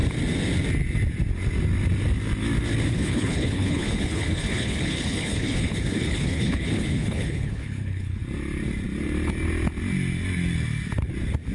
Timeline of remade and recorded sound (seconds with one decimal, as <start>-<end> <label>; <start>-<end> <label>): 0.0-2.9 recorded; 2.9-8.2 remade; 8.2-11.5 recorded